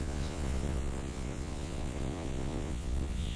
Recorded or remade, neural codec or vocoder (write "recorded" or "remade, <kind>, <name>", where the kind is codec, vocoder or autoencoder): remade, vocoder, Vocos